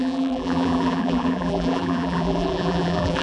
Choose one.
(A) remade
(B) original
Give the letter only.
A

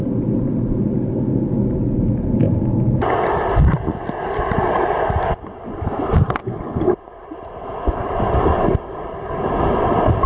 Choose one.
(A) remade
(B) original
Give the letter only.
B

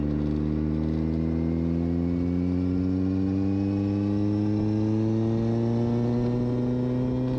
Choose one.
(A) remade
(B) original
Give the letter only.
B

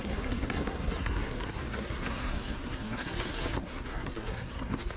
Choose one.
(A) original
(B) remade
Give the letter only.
B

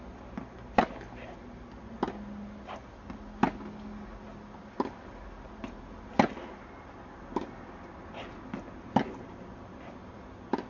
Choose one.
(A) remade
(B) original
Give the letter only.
B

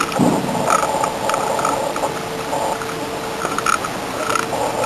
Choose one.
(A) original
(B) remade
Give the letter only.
A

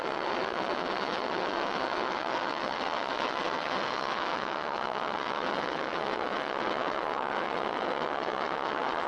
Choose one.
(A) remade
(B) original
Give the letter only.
A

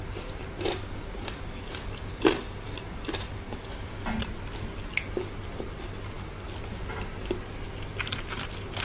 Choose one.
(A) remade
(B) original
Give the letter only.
B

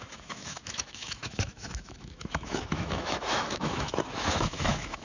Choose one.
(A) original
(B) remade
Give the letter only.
B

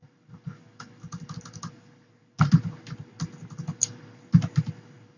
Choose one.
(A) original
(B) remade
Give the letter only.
A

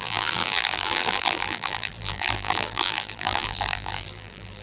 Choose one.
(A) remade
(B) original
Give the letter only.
A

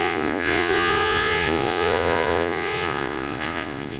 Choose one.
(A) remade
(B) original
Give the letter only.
A